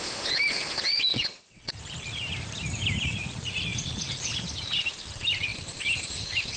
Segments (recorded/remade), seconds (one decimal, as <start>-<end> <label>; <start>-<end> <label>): 0.0-1.1 recorded; 1.1-1.8 remade; 1.8-6.6 recorded